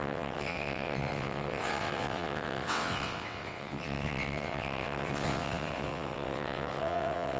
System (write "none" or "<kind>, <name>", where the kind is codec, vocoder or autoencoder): vocoder, WaveNeXt